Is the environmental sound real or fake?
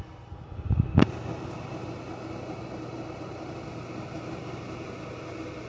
real